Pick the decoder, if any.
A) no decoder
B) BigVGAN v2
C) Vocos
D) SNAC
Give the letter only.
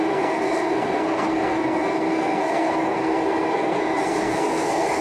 D